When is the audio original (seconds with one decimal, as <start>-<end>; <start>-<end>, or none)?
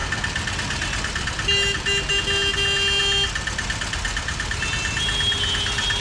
0.0-6.0